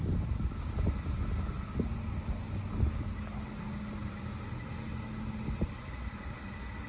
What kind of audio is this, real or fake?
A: real